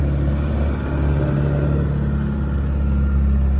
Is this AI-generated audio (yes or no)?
no